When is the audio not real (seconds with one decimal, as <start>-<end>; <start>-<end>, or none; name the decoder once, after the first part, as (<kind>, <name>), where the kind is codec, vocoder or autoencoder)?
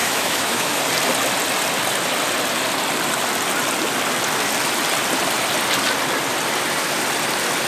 0.0-0.8 (autoencoder, DAC-VAE)